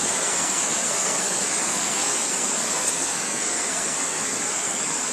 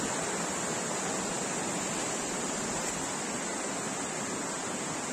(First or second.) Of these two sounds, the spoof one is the first